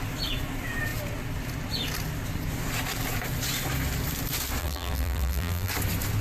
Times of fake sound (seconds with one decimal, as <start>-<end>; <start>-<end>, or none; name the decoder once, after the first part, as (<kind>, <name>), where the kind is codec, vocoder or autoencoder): 4.6-5.7 (vocoder, BigVGAN v2)

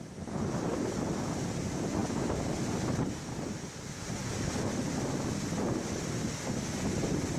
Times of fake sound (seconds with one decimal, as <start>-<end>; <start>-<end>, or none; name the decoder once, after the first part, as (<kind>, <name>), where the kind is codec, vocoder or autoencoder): none

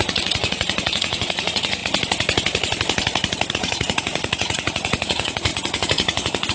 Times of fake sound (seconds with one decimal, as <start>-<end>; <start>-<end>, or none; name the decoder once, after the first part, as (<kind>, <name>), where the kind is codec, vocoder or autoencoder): 0.0-1.8 (vocoder, Vocos); 3.5-6.5

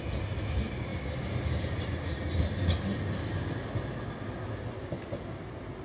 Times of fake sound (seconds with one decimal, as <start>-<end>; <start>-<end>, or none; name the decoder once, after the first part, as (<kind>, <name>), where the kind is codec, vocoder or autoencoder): none

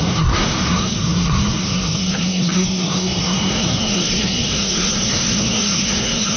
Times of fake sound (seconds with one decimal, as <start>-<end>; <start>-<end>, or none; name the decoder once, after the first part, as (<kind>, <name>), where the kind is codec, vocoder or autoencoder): 0.0-6.4 (codec, SNAC)

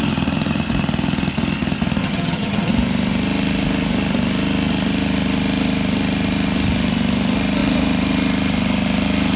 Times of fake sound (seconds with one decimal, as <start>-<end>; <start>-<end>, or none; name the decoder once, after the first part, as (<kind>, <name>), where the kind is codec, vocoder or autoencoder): 2.0-2.7 (vocoder, HiFi-GAN)